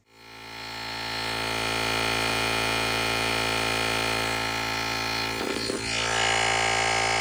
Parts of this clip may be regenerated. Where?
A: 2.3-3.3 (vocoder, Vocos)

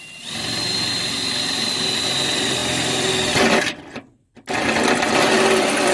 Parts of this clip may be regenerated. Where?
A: none

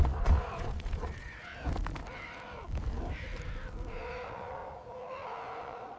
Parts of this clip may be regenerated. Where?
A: 0.0-1.5 (vocoder, Vocos); 3.9-4.6; 5.6-6.0

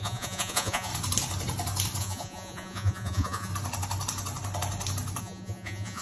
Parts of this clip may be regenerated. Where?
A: 0.0-0.9 (vocoder, Vocos); 2.0-3.5; 5.2-6.0

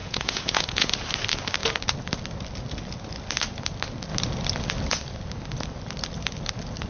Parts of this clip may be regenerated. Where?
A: 0.0-0.9 (vocoder, Vocos)

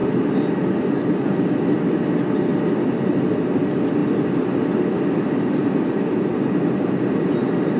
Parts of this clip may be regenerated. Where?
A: none